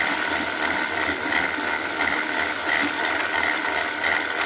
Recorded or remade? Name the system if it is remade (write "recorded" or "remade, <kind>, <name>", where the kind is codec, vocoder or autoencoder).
recorded